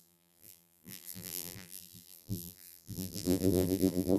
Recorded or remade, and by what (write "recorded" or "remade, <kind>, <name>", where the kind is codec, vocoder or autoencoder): remade, vocoder, BigVGAN v2